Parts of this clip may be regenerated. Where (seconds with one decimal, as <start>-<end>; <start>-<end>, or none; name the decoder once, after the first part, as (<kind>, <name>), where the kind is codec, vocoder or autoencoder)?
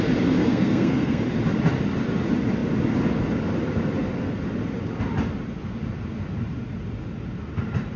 0.4-1.2 (codec, SNAC)